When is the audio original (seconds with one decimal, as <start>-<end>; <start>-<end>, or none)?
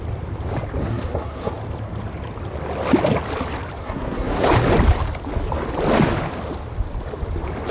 0.0-0.8; 1.5-3.8; 4.5-7.7